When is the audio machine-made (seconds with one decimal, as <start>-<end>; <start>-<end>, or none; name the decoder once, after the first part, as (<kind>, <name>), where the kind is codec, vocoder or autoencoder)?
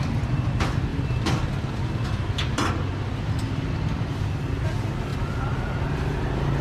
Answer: none